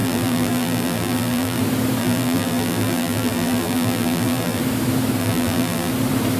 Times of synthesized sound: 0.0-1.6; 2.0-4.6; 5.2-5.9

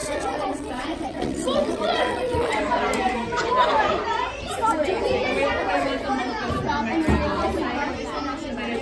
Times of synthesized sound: 0.0-2.6

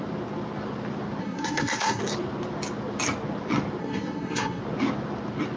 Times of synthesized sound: 1.2-2.0; 3.8-4.6

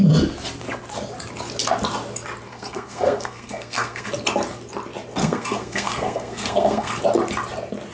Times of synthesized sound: 2.5-4.1; 5.2-6.9